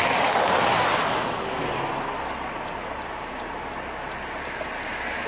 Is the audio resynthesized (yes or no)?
no